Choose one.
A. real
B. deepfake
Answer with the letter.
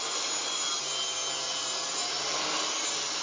A